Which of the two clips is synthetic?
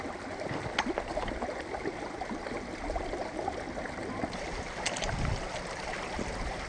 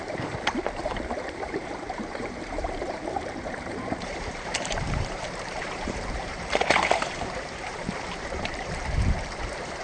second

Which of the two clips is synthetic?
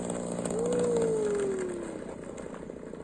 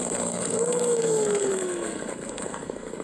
second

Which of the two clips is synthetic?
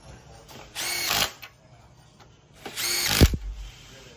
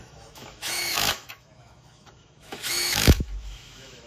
second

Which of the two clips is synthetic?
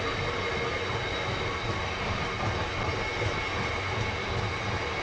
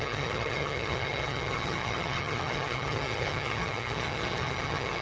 second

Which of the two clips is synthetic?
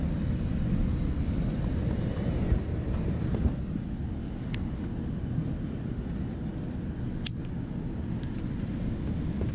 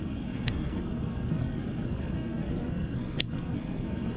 second